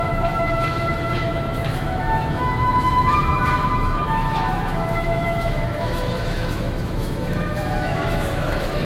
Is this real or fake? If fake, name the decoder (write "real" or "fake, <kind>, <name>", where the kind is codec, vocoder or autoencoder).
fake, autoencoder, DAC-VAE